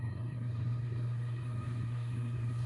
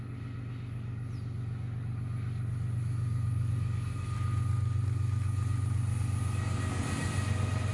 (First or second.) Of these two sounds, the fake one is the first